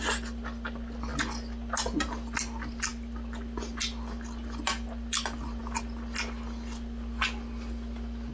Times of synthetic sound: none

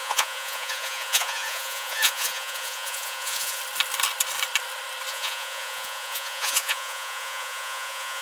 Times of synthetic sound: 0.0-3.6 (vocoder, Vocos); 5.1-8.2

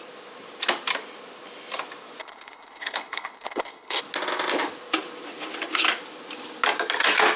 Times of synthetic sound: 2.2-4.0 (codec, HILCodec)

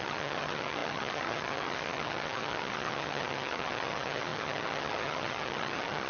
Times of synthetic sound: 0.0-6.1 (vocoder, HiFi-GAN)